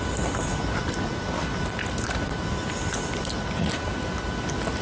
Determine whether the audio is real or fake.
real